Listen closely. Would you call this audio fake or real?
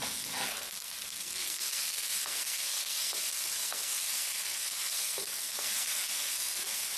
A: fake